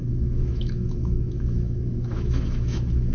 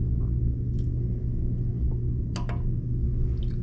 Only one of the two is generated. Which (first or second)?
first